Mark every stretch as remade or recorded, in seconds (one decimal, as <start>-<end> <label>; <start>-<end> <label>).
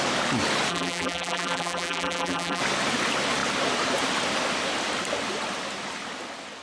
0.0-0.7 recorded; 0.7-2.6 remade; 2.6-6.6 recorded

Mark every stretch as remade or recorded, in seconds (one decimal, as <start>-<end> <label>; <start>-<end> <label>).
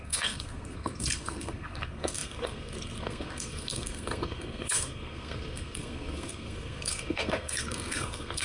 0.0-8.4 remade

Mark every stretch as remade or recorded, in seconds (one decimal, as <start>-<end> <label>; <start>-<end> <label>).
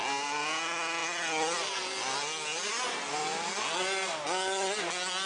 0.0-5.3 recorded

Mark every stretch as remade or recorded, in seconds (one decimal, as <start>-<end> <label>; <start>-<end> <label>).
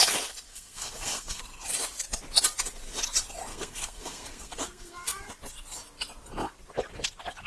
0.0-0.5 recorded; 0.5-1.4 remade; 1.4-3.5 recorded; 3.5-5.3 remade; 5.3-7.5 recorded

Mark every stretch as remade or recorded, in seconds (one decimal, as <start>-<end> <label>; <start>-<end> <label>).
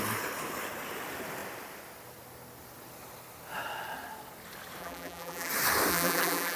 0.0-4.8 recorded; 4.8-5.5 remade; 5.5-5.9 recorded; 5.9-6.6 remade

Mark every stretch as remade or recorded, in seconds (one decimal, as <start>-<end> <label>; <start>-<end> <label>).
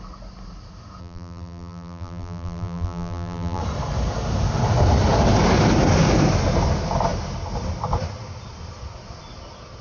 0.0-1.0 recorded; 1.0-3.6 remade; 3.6-9.8 recorded